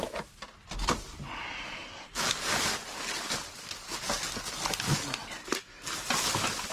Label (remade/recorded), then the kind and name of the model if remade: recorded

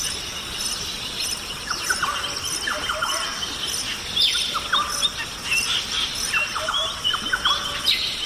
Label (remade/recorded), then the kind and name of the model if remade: recorded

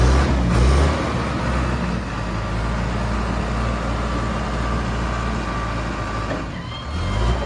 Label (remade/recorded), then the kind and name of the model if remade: recorded